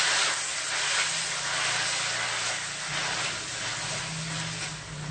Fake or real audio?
real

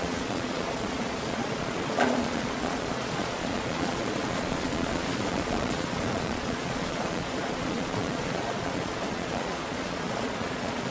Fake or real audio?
fake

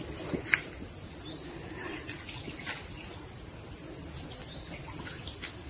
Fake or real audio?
real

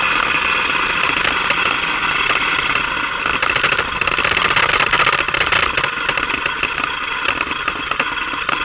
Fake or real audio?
real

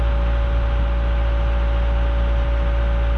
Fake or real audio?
real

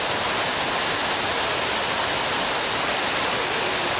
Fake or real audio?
real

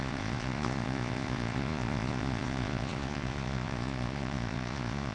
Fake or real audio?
fake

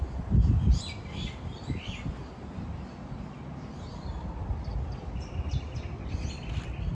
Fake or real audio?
real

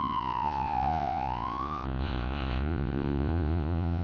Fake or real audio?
fake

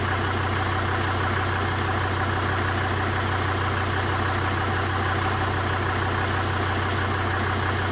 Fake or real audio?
real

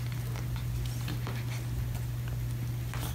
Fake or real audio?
real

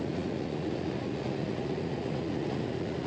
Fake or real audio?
fake